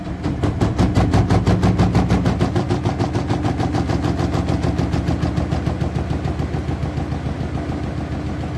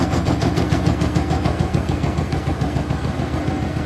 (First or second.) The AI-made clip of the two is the second